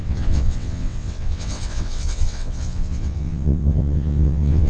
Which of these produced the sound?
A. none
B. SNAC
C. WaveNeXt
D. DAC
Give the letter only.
C